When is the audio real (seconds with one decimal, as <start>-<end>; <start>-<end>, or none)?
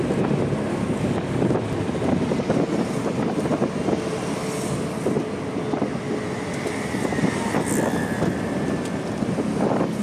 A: 0.0-0.7; 1.4-10.0